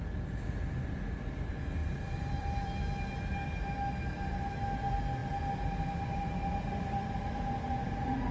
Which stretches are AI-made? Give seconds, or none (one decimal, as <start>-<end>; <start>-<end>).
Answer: 1.8-2.8